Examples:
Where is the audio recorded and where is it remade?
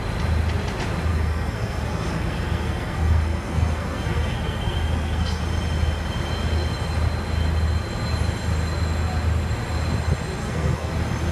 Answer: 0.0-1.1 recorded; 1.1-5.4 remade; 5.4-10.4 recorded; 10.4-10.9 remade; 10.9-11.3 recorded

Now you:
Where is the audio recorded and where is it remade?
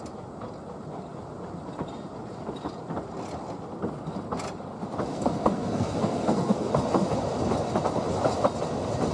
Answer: 0.0-5.1 recorded; 5.1-6.7 remade; 6.7-9.1 recorded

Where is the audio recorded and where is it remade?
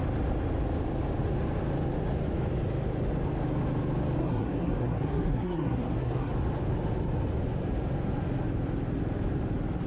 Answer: 0.0-4.2 recorded; 4.2-6.3 remade; 6.3-9.9 recorded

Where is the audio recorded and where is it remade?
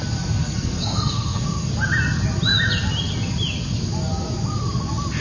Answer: 0.0-0.4 recorded; 0.4-1.7 remade; 1.7-5.2 recorded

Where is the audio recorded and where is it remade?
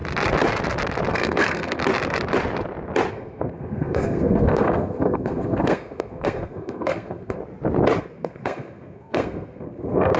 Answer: 0.0-1.1 recorded; 1.1-1.8 remade; 1.8-3.1 recorded; 3.1-7.4 remade; 7.4-8.0 recorded; 8.0-10.2 remade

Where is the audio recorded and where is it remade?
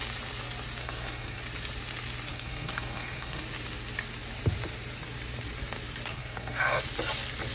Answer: 0.0-0.8 recorded; 0.8-1.4 remade; 1.4-2.3 recorded; 2.3-3.4 remade; 3.4-6.1 recorded; 6.1-6.8 remade; 6.8-7.5 recorded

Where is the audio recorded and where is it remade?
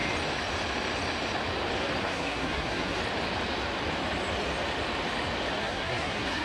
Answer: 0.0-2.0 recorded; 2.0-3.0 remade; 3.0-5.6 recorded; 5.6-6.4 remade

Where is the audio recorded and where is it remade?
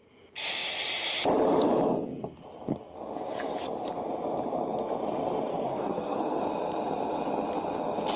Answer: 0.0-5.5 recorded; 5.5-6.4 remade; 6.4-8.2 recorded